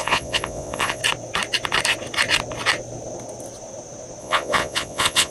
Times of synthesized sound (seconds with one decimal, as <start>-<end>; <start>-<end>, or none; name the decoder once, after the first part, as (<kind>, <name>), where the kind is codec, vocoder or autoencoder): 0.0-1.0 (vocoder, Vocos); 4.2-5.3